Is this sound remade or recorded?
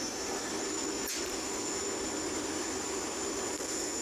recorded